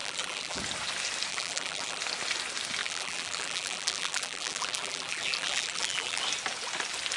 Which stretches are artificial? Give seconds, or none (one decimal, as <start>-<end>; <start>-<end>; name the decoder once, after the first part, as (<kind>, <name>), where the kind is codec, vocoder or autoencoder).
0.0-0.6 (vocoder, BigVGAN v2); 1.3-2.0; 2.8-6.2